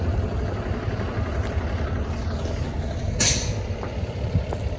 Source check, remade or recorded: recorded